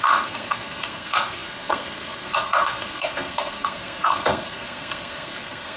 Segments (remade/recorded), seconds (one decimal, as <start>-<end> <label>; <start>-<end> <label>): 0.0-5.8 remade

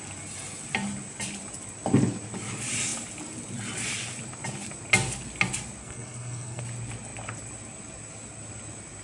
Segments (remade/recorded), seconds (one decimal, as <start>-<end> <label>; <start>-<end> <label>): 0.0-5.8 recorded; 5.8-6.6 remade; 6.6-9.0 recorded

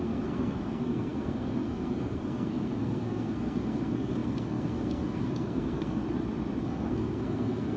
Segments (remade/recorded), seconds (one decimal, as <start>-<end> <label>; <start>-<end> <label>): 0.0-6.0 remade; 6.0-6.6 recorded; 6.6-7.8 remade

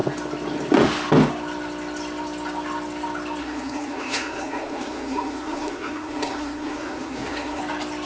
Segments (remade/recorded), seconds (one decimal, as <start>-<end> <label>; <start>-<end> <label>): 0.0-3.4 recorded; 3.4-7.6 remade; 7.6-8.1 recorded

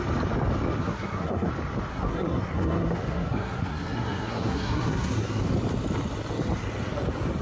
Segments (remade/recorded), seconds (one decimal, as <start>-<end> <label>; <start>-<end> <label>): 0.0-0.8 recorded; 0.8-1.5 remade; 1.5-1.9 recorded; 1.9-5.4 remade; 5.4-7.4 recorded

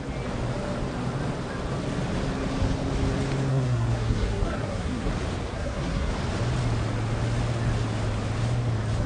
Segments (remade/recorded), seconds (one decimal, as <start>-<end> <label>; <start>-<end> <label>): 0.0-3.5 recorded; 3.5-5.1 remade; 5.1-5.5 recorded; 5.5-6.1 remade; 6.1-9.1 recorded

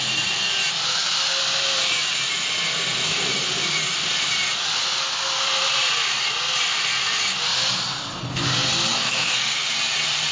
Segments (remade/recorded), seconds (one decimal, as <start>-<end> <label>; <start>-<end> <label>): 0.0-8.9 recorded; 8.9-9.7 remade; 9.7-10.3 recorded

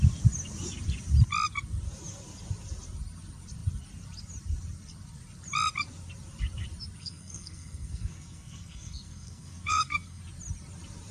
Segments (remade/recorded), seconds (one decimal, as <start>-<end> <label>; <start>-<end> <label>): 0.0-7.0 recorded; 7.0-10.2 remade; 10.2-11.1 recorded